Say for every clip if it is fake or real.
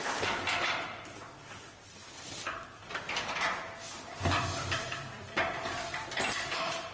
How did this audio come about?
fake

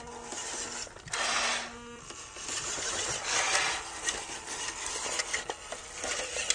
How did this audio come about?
real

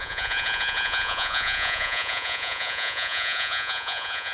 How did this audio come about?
fake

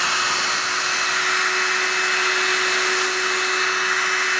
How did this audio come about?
real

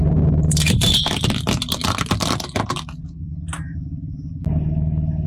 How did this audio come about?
real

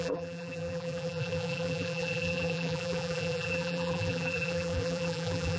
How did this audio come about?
fake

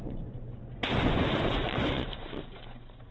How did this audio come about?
fake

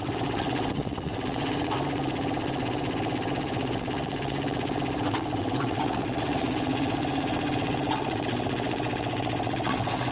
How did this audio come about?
fake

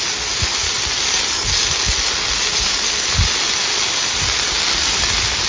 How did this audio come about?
real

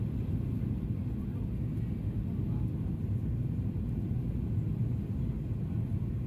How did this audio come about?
real